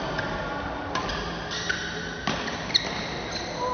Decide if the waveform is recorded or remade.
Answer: recorded